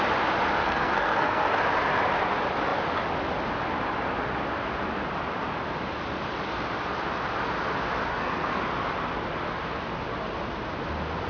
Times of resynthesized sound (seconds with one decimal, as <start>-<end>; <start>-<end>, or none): 0.6-1.6; 8.1-8.6